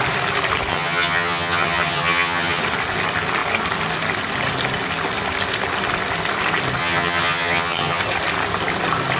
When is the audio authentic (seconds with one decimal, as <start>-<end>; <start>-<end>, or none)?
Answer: 0.0-0.7; 2.6-6.8; 8.0-9.2